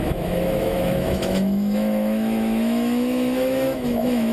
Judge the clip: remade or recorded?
remade